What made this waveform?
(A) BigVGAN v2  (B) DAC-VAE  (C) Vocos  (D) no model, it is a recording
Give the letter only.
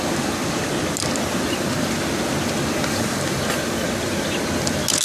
D